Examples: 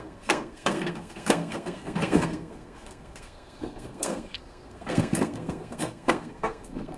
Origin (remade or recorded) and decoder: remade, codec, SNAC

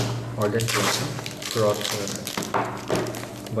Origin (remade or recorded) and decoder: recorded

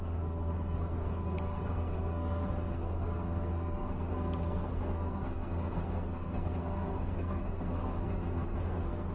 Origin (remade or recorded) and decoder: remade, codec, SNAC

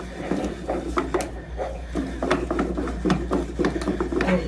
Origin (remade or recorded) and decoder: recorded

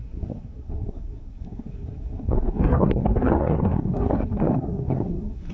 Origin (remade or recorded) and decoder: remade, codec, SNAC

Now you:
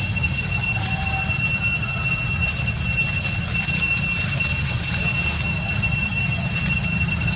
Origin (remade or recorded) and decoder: recorded